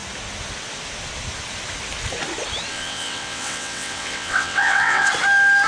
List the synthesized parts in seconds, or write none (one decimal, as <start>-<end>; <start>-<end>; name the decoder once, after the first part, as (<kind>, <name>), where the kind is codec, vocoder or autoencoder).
2.7-5.1 (vocoder, WaveNeXt)